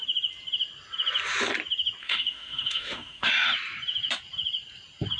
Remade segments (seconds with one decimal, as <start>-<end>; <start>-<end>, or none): 2.0-3.3